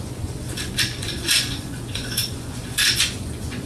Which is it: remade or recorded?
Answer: remade